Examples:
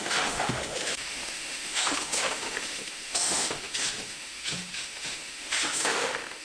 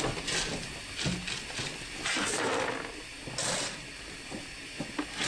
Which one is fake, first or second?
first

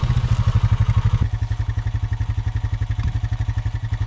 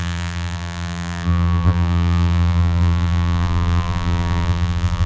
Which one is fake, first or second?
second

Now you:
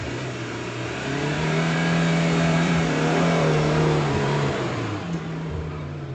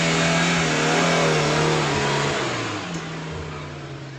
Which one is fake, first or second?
first